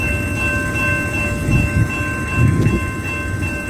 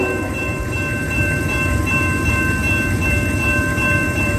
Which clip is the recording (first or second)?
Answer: first